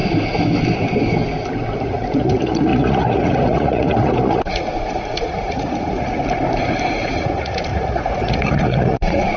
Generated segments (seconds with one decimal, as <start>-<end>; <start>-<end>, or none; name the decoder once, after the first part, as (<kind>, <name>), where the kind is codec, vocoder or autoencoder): 1.8-6.2 (vocoder, Vocos); 6.9-9.4